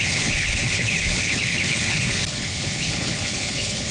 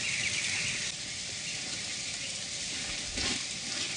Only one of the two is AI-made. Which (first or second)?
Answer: first